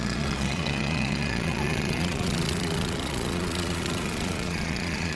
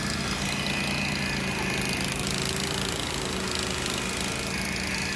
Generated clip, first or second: first